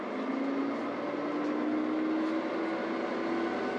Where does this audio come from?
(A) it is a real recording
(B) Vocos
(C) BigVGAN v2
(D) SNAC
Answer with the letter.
A